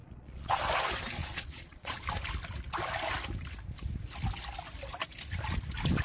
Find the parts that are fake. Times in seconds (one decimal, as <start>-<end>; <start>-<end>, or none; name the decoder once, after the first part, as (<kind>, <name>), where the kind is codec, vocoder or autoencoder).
0.0-0.6 (vocoder, Vocos); 1.2-2.0